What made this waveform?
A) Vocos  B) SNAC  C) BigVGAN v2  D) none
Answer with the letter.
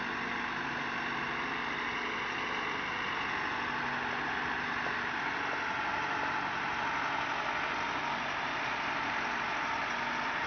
D